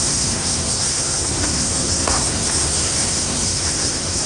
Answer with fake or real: fake